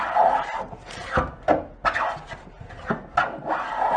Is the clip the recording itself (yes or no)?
yes